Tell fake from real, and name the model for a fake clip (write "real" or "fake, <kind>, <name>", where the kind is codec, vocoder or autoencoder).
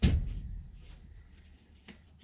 fake, vocoder, BigVGAN v2